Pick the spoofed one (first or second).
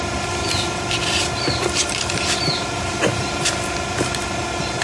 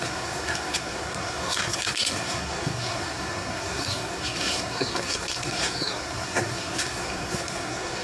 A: second